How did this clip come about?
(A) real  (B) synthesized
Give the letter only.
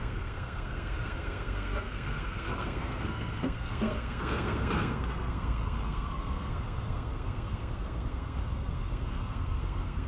B